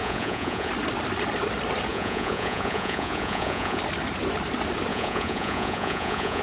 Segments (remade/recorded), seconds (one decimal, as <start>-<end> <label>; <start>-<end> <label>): 0.0-0.7 remade; 0.7-1.9 recorded; 1.9-3.8 remade; 3.8-4.9 recorded; 4.9-6.4 remade